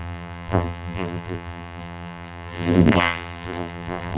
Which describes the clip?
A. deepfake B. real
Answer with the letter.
A